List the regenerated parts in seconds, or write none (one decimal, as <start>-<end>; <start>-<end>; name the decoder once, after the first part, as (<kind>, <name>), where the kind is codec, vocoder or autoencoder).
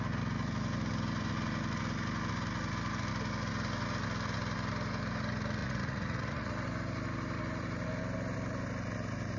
5.6-6.5 (vocoder, Vocos)